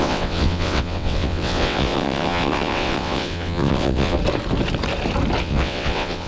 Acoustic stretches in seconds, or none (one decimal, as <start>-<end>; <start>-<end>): 4.2-5.4